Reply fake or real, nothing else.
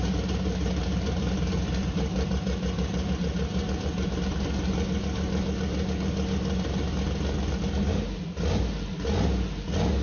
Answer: real